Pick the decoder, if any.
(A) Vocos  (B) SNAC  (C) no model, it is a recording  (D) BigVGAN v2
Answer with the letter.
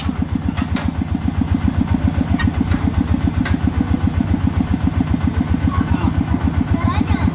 C